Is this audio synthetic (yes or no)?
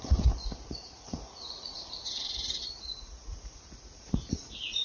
yes